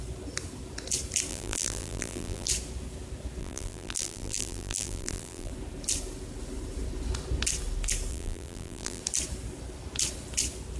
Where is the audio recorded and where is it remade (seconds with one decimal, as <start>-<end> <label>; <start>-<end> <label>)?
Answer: 0.0-1.3 recorded; 1.3-2.5 remade; 2.5-3.4 recorded; 3.4-5.5 remade; 5.5-8.1 recorded; 8.1-9.0 remade; 9.0-10.8 recorded

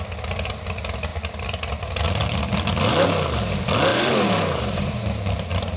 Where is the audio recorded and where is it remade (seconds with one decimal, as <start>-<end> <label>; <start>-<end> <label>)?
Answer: 0.0-3.9 recorded; 3.9-4.9 remade; 4.9-5.8 recorded

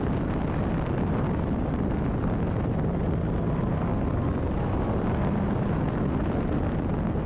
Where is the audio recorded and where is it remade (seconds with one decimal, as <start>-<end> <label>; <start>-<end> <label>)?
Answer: 0.0-7.3 recorded

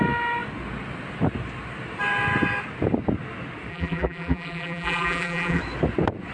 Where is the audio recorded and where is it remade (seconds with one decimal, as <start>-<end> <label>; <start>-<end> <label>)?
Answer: 0.0-3.7 recorded; 3.7-5.6 remade; 5.6-6.3 recorded

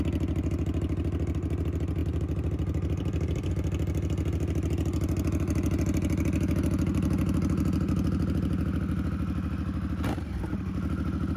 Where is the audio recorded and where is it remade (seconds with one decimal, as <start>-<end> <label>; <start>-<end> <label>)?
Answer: 0.0-2.0 recorded; 2.0-3.5 remade; 3.5-11.4 recorded

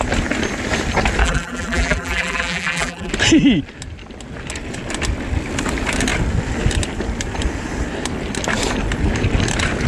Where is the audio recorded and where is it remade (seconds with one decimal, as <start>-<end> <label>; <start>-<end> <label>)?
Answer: 0.0-1.2 recorded; 1.2-3.1 remade; 3.1-9.9 recorded

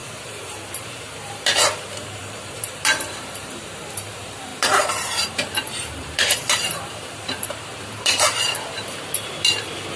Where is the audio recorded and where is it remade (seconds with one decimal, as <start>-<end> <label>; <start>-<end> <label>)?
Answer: 0.0-10.0 remade

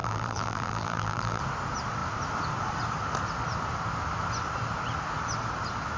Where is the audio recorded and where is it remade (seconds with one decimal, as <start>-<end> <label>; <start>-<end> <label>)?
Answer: 0.0-1.4 remade; 1.4-6.0 recorded